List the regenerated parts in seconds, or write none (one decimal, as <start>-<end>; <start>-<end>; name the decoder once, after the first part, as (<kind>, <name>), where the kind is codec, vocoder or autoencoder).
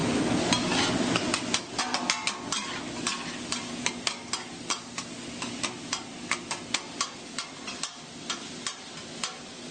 none